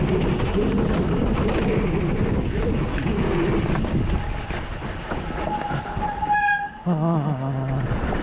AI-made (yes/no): no